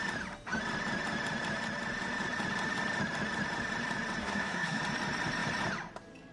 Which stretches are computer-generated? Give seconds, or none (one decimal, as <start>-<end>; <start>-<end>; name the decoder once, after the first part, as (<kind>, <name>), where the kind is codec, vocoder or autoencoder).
4.2-4.8 (codec, SNAC)

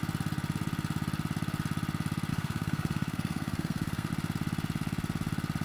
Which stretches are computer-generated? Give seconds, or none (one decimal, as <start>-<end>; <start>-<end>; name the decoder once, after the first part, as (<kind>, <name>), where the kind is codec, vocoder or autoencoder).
2.3-4.1 (codec, SNAC)

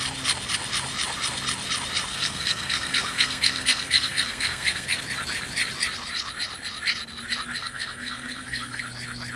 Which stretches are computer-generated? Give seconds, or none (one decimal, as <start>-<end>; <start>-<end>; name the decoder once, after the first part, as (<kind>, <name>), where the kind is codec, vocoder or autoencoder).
2.1-5.0 (codec, SNAC); 7.6-8.8

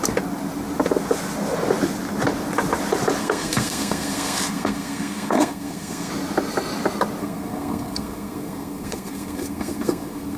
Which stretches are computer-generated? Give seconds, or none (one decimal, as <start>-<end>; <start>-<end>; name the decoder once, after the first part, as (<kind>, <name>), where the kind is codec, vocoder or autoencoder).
3.2-6.1 (codec, SNAC); 7.2-10.4

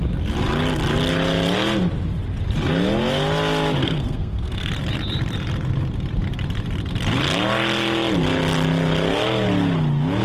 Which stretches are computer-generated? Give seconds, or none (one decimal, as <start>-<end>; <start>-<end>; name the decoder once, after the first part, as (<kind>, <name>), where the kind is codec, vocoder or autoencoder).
3.8-4.7 (codec, SNAC)

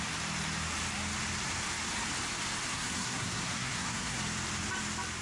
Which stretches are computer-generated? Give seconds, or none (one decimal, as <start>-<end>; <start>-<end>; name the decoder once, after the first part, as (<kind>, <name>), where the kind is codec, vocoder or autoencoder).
2.7-4.2 (codec, SNAC)

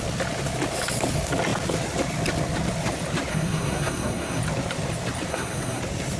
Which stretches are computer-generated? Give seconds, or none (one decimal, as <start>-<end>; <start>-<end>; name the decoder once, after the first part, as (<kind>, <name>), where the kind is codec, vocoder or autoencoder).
3.3-4.4 (codec, SNAC); 5.3-5.8

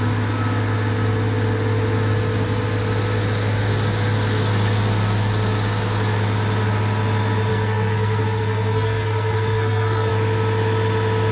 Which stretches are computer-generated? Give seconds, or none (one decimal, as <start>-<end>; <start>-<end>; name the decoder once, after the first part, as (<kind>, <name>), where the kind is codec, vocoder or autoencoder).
7.5-10.1 (codec, SNAC)